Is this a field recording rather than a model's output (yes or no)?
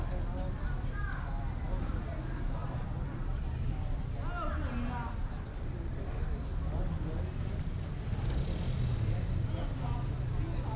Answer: yes